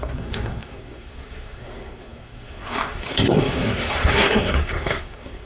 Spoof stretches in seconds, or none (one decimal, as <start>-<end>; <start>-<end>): 0.0-5.5